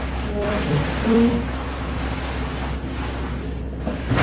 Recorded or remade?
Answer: remade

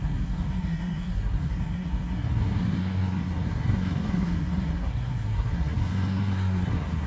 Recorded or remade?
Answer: remade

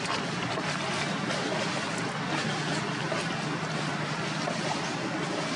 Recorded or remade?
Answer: recorded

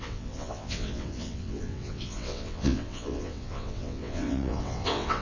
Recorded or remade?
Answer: remade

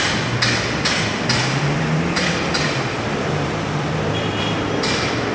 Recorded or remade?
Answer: remade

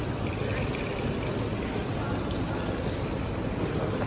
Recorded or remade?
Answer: recorded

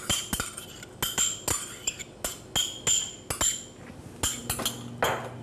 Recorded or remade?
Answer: recorded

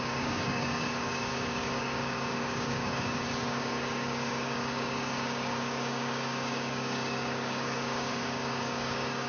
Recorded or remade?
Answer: remade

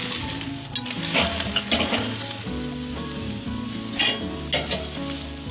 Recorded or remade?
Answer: recorded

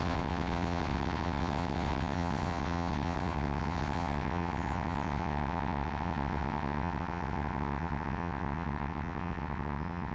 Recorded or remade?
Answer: remade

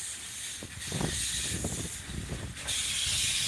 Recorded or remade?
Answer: recorded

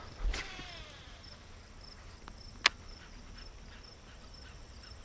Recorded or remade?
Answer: recorded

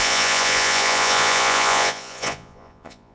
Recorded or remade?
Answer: remade